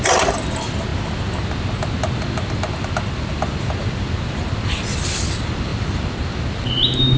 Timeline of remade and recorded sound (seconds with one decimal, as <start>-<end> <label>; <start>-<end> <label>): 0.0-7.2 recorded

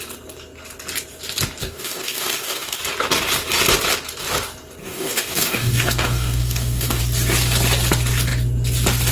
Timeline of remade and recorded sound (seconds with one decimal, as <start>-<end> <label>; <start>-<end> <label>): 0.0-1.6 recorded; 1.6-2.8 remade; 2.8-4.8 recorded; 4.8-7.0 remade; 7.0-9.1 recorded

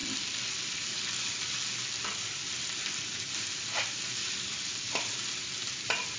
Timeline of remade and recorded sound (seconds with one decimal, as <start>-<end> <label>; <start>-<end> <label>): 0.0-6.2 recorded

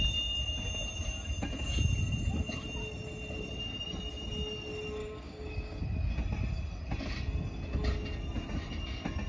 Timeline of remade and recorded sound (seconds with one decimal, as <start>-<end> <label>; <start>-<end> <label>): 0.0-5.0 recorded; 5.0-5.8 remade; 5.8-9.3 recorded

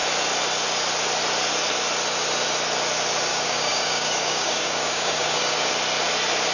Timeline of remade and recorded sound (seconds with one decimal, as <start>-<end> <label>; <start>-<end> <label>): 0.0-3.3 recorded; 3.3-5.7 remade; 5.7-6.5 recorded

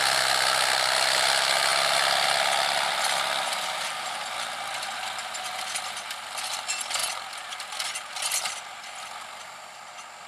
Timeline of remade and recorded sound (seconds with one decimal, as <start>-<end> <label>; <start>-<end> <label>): 0.0-10.3 recorded